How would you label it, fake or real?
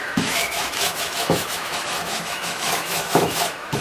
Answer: fake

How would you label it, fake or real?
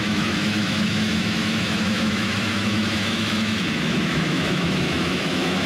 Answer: fake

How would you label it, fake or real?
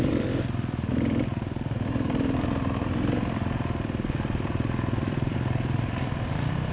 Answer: real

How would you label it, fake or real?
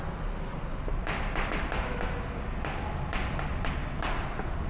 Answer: real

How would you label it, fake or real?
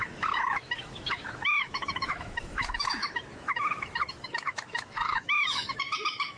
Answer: fake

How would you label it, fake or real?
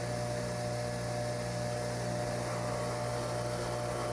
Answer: real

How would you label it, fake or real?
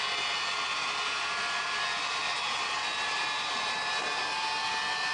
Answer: real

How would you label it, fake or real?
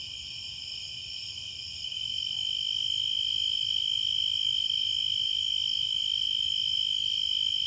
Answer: real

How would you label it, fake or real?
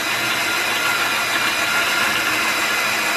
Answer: real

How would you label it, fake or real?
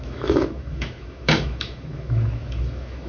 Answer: fake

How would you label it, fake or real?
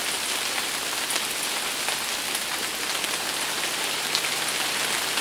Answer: real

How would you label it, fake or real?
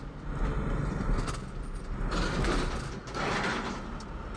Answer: real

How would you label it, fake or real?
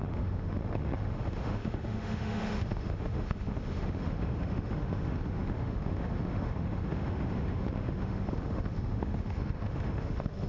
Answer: fake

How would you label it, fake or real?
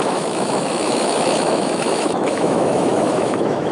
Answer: fake